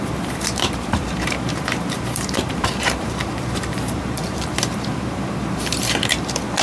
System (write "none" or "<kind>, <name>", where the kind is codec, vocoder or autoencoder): vocoder, BigVGAN v2